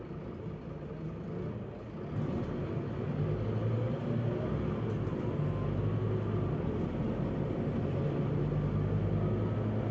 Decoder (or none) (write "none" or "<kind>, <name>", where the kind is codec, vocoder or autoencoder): none